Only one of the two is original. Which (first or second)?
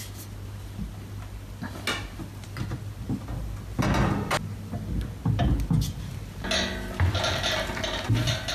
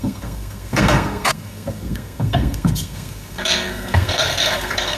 first